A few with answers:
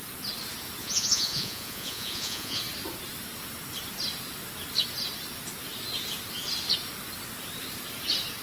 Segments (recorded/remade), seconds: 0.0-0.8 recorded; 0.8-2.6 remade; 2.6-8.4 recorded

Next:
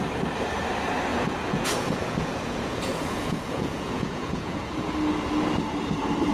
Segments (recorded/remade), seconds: 0.0-1.1 recorded; 1.1-4.9 remade; 4.9-6.3 recorded

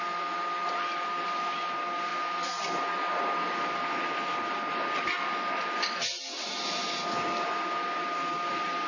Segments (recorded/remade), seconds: 0.0-8.9 recorded

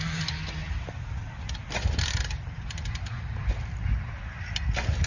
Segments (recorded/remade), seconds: 0.0-0.6 recorded; 0.6-3.7 remade; 3.7-5.1 recorded

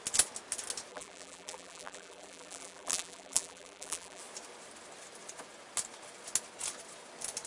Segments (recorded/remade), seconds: 0.0-0.9 recorded; 0.9-4.2 remade; 4.2-7.5 recorded

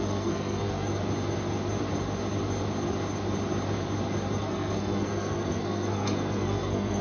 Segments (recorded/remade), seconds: 0.0-0.9 remade; 0.9-4.4 recorded; 4.4-7.0 remade